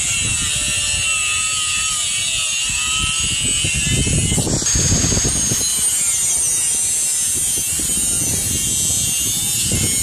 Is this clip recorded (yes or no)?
yes